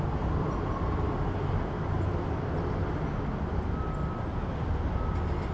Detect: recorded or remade recorded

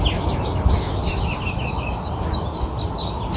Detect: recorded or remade recorded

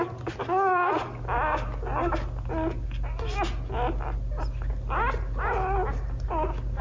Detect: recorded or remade recorded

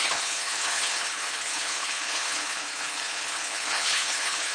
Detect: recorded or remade remade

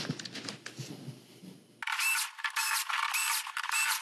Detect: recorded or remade recorded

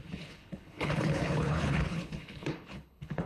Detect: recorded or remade remade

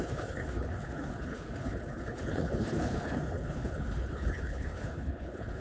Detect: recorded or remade remade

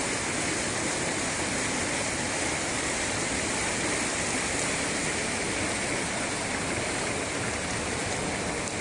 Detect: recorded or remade recorded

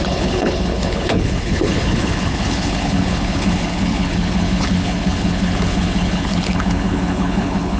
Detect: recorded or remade remade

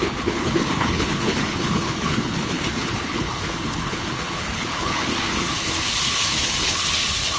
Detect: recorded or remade remade